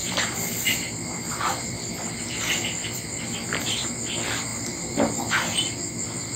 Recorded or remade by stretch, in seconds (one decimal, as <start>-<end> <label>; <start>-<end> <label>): 0.0-2.2 remade; 2.2-4.5 recorded; 4.5-5.3 remade; 5.3-6.4 recorded